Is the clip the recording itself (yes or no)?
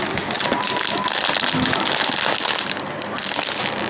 yes